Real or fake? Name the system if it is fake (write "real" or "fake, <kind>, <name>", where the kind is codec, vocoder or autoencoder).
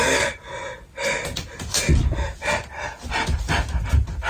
real